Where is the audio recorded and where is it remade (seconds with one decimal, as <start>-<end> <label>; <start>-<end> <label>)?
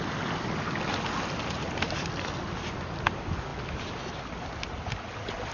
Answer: 0.0-5.5 recorded